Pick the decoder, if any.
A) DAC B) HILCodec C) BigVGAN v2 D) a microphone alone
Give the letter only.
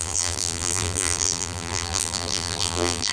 C